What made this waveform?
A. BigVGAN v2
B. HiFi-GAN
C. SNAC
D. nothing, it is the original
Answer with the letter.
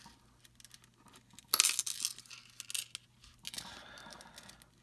D